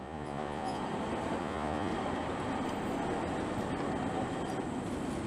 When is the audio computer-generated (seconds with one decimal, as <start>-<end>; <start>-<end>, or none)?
0.0-0.8; 1.4-1.9